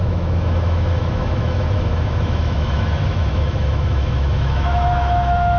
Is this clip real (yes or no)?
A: no